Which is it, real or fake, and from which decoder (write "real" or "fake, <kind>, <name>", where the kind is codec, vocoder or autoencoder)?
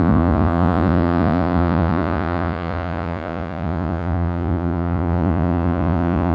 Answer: fake, vocoder, Vocos